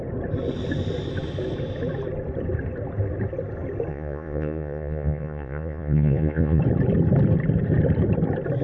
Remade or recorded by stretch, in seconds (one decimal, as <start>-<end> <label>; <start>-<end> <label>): 0.0-3.9 recorded; 3.9-6.6 remade; 6.6-8.6 recorded